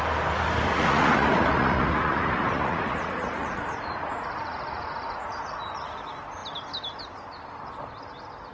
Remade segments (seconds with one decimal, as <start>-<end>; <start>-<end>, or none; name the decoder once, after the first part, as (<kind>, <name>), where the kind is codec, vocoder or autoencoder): 0.7-5.4 (vocoder, Vocos)